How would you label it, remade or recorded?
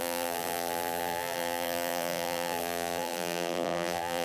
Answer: remade